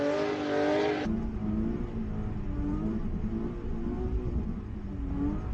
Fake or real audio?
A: real